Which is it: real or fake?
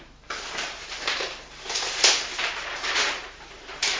fake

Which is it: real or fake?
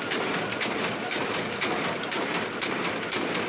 real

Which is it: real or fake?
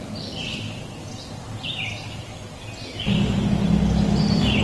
real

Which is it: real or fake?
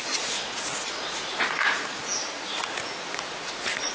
fake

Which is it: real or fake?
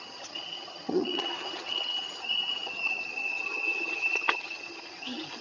fake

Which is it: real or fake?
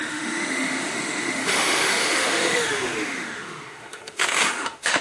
fake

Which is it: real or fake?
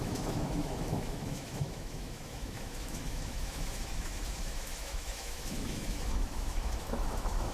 fake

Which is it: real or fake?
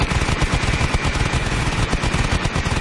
fake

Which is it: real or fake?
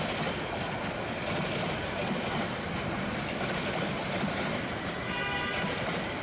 real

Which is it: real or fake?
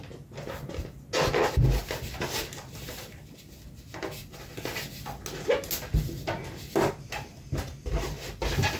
real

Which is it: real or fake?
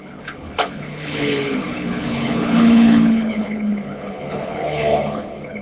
fake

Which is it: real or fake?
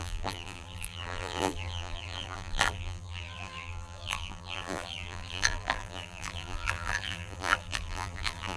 fake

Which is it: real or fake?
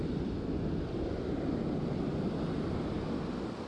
real